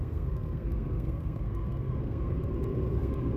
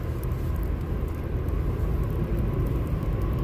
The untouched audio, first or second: second